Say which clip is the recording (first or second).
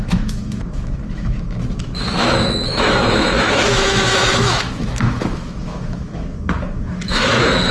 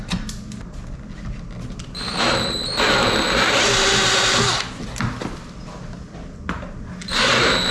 second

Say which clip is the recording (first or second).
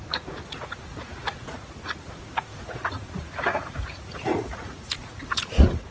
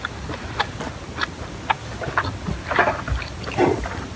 second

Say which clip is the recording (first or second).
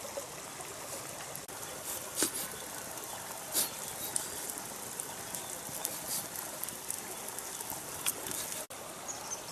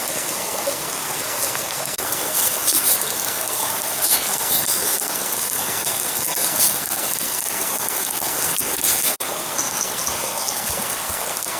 first